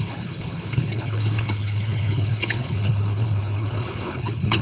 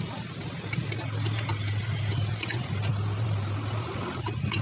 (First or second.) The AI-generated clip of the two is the first